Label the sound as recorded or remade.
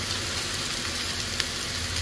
recorded